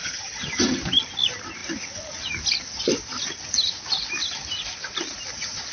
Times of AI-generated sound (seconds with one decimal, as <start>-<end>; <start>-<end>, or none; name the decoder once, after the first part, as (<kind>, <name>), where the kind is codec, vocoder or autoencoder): 0.0-0.8 (vocoder, HiFi-GAN)